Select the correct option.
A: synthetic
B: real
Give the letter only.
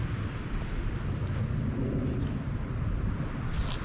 B